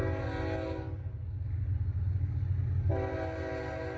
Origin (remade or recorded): recorded